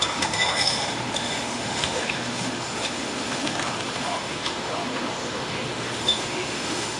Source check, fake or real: fake